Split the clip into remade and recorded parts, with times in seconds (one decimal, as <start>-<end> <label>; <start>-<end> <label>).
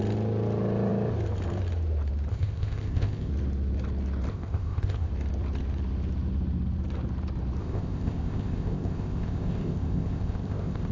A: 0.0-2.3 recorded; 2.3-3.3 remade; 3.3-4.3 recorded; 4.3-5.1 remade; 5.1-7.6 recorded; 7.6-10.9 remade